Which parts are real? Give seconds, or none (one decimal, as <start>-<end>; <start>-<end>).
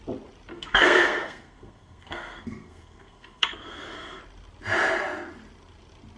0.0-0.5; 4.2-6.2